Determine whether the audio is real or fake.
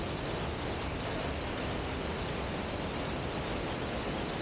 real